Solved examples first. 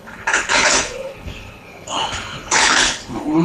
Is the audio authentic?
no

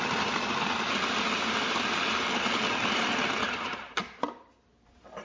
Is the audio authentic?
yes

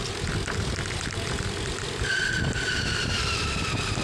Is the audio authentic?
yes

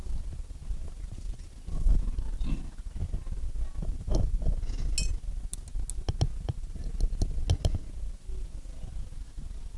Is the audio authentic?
yes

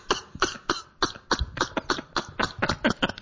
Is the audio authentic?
yes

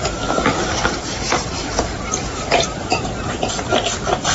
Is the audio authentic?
yes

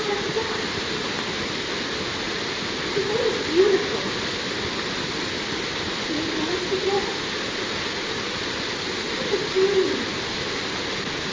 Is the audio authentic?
yes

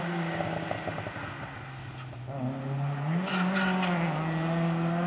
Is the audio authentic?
yes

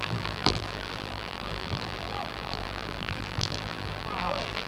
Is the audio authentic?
no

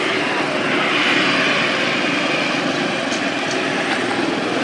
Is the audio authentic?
yes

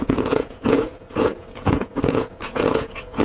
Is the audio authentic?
no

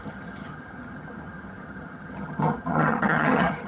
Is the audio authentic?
no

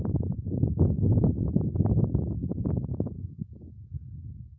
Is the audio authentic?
yes